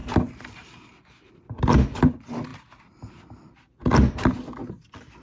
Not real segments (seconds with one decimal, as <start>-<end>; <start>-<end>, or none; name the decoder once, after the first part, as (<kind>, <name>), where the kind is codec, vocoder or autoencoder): none